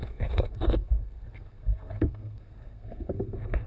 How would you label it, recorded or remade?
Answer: remade